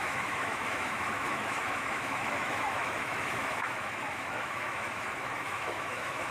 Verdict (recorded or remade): remade